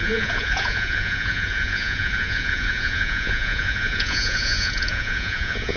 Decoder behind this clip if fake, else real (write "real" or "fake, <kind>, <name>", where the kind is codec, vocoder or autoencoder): fake, vocoder, Vocos